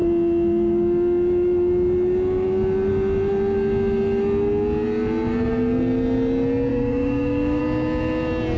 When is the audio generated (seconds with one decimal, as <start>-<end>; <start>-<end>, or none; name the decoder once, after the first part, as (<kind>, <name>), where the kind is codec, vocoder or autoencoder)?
6.7-7.6 (codec, DAC)